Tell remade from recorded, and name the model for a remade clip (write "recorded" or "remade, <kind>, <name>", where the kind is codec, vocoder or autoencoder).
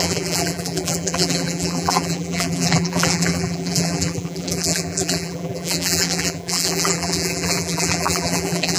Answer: remade, vocoder, BigVGAN v2